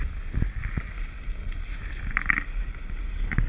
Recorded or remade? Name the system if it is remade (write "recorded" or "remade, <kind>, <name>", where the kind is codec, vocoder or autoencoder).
recorded